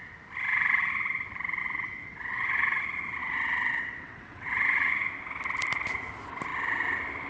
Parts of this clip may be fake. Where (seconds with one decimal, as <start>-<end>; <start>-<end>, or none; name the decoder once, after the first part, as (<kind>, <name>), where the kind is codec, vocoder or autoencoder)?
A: 1.6-2.8 (vocoder, WaveNeXt); 3.2-4.9